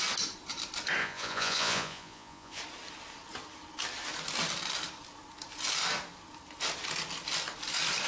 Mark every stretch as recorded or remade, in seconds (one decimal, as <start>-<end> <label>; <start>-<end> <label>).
0.0-1.0 recorded; 1.0-2.6 remade; 2.6-8.1 recorded

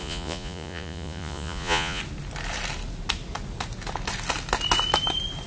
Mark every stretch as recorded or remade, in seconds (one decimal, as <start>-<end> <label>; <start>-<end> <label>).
0.0-2.0 remade; 2.0-5.5 recorded

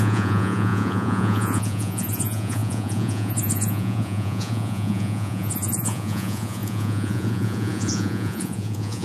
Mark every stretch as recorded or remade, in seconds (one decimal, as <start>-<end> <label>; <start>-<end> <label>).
0.0-9.0 remade

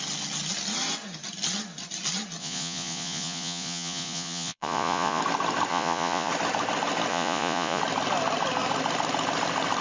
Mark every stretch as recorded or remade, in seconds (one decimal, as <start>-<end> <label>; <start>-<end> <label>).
0.0-2.4 recorded; 2.4-5.2 remade; 5.2-5.7 recorded; 5.7-6.3 remade; 6.3-7.1 recorded; 7.1-7.8 remade; 7.8-9.8 recorded

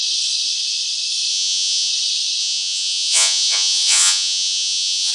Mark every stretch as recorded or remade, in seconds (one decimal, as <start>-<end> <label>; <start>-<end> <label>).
0.0-1.3 recorded; 1.3-1.9 remade; 1.9-2.4 recorded; 2.4-5.1 remade